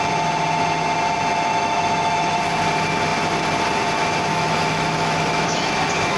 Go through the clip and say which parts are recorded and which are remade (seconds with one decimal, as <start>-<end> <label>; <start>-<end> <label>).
0.0-1.5 recorded; 1.5-2.4 remade; 2.4-4.3 recorded; 4.3-5.7 remade; 5.7-6.2 recorded